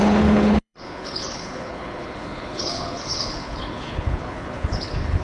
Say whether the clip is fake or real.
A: fake